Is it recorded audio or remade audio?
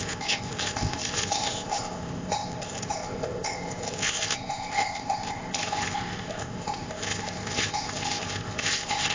remade